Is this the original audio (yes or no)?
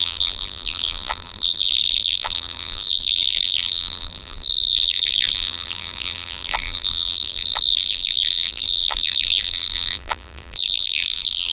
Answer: no